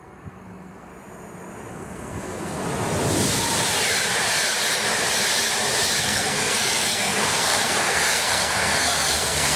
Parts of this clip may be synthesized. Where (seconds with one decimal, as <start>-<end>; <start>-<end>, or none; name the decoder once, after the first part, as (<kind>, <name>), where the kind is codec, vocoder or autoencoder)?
0.0-0.9 (codec, SNAC); 1.7-2.6; 6.0-9.6